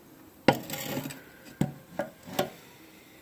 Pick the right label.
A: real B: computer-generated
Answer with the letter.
A